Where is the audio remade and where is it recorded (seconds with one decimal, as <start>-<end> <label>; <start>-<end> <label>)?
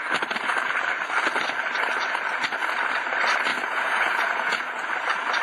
0.0-3.5 recorded; 3.5-4.9 remade; 4.9-5.4 recorded